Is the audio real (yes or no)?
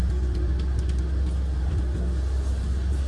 yes